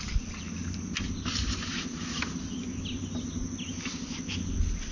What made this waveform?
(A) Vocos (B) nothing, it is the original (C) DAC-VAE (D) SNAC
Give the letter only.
B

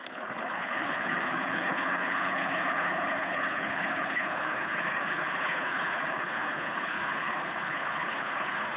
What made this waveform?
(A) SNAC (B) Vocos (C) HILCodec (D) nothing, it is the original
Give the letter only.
C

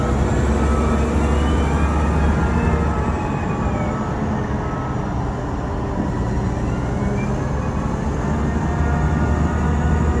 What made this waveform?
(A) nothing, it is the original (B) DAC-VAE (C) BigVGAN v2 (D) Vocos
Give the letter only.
A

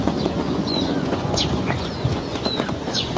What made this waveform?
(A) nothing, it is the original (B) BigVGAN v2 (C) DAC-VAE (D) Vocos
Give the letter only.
D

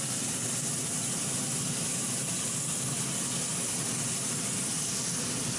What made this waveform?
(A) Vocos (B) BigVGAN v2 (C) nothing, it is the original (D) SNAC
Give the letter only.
C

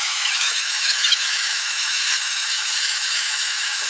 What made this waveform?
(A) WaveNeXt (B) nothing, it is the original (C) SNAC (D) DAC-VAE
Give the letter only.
D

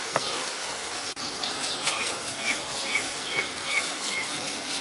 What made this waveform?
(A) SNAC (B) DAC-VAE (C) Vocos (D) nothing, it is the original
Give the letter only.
A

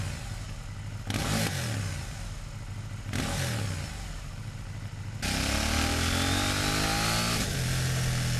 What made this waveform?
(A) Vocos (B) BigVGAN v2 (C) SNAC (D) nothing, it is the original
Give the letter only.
D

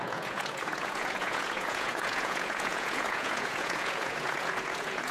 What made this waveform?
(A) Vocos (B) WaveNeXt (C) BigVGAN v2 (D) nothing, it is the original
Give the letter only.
A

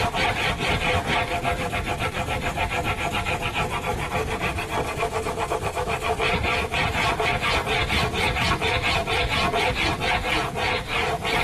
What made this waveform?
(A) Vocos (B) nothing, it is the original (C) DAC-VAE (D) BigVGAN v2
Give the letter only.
B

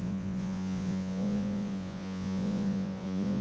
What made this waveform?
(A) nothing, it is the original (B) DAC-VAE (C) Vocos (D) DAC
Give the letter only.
C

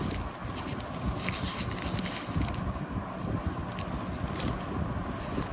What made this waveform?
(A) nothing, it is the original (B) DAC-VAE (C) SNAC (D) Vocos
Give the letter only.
A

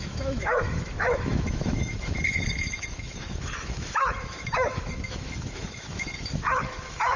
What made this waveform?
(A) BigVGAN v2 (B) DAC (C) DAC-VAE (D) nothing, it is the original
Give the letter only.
C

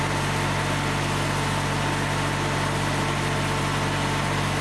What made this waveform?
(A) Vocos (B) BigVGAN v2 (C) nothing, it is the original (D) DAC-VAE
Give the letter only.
C